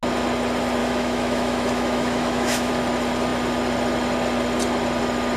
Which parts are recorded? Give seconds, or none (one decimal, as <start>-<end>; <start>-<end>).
0.0-0.8; 2.7-5.4